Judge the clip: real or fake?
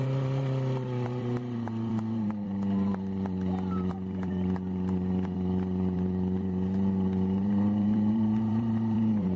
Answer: fake